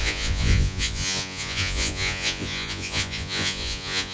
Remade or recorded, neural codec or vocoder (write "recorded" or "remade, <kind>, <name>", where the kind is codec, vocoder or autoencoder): remade, vocoder, Vocos